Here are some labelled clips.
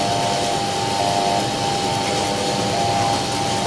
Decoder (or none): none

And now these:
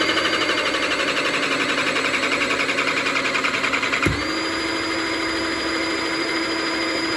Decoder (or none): none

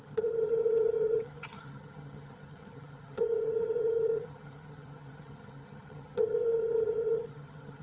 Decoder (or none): vocoder, HiFi-GAN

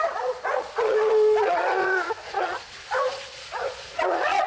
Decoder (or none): vocoder, Vocos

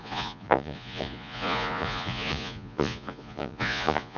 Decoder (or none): vocoder, Vocos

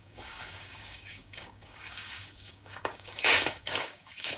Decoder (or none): codec, DAC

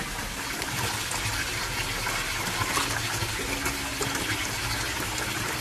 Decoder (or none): none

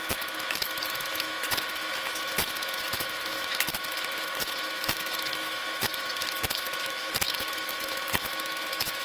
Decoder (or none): autoencoder, DAC-VAE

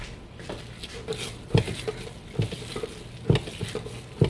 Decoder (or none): none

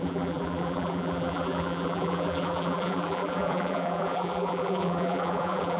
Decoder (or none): vocoder, BigVGAN v2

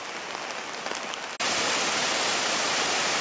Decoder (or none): none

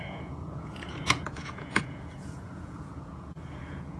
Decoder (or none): vocoder, Vocos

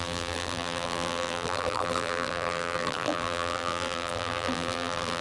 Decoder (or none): vocoder, BigVGAN v2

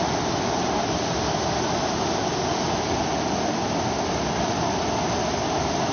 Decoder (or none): none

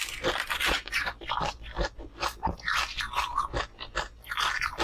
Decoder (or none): none